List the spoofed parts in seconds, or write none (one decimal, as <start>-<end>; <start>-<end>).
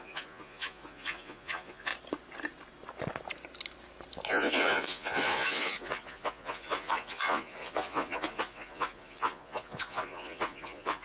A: 0.0-1.9; 4.3-11.0